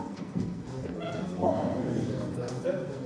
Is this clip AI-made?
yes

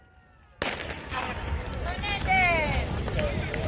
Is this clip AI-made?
no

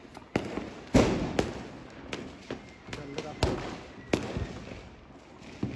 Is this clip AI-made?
no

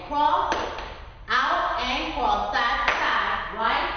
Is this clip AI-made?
no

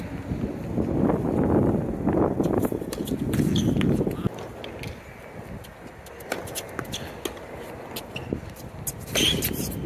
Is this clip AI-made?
no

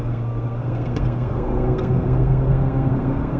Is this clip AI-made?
yes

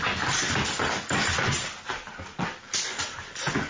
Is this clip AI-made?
no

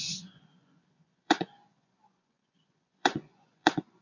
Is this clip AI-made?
yes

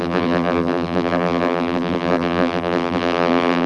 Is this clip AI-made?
yes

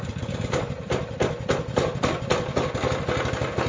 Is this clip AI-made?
no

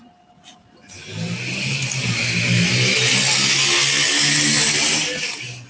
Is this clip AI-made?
no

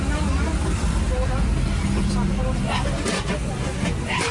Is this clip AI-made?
no